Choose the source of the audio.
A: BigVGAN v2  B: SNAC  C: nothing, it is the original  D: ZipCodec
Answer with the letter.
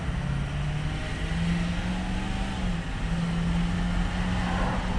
C